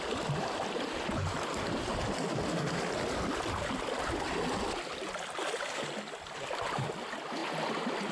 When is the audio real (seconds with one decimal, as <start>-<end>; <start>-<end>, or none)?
0.0-8.1